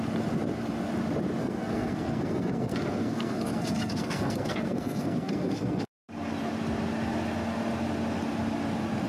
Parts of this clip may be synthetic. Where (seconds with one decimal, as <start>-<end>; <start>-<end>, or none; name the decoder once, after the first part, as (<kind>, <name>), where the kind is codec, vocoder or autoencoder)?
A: 1.4-5.9 (codec, SNAC)